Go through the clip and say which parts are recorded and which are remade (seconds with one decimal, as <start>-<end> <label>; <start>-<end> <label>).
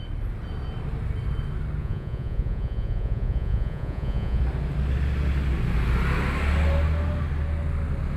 0.0-1.8 recorded; 1.8-4.4 remade; 4.4-8.2 recorded